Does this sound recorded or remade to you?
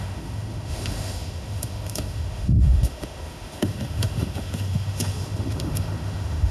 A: remade